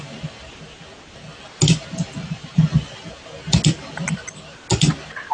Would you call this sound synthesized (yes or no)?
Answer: no